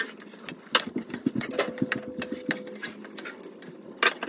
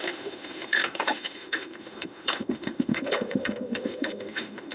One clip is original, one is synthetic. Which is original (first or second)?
first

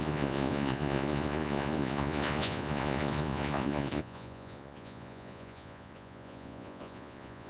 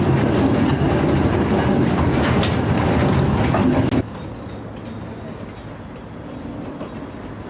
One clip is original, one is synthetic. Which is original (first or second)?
second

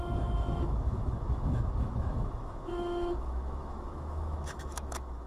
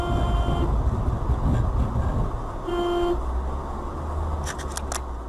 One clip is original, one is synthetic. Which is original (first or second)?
second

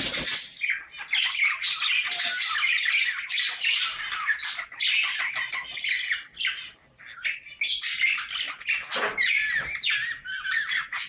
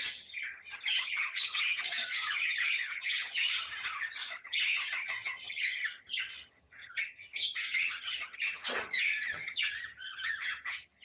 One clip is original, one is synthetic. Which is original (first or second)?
first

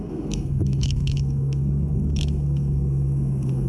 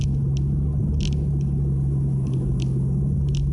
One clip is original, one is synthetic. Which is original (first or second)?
second